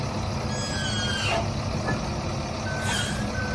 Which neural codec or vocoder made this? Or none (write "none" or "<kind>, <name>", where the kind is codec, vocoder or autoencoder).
none